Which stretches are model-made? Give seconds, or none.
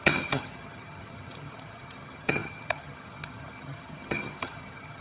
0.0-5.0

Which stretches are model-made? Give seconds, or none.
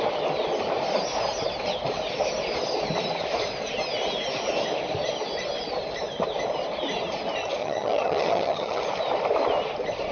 7.6-8.8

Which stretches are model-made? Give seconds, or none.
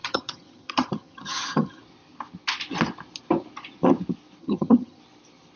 0.0-1.8; 4.4-5.0